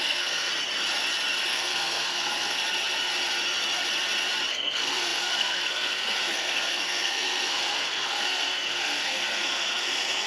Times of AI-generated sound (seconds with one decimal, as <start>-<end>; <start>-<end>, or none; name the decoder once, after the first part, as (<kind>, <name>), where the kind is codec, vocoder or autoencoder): 0.0-0.5 (codec, SNAC); 1.5-2.6; 4.5-10.3